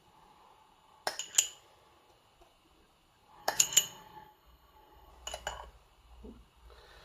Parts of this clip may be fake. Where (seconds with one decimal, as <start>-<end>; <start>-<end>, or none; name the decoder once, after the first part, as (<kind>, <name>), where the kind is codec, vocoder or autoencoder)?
3.4-5.1 (codec, SNAC)